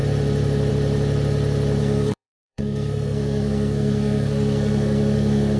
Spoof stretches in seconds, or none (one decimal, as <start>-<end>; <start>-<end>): 1.8-5.6